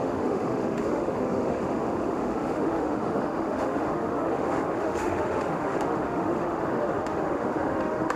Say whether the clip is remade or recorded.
remade